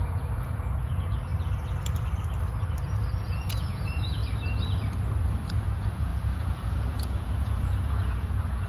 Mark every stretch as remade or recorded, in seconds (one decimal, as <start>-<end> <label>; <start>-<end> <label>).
0.0-1.3 remade; 1.3-3.2 recorded; 3.2-4.2 remade; 4.2-5.5 recorded; 5.5-8.7 remade